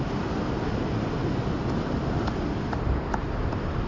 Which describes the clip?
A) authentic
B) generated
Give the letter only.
A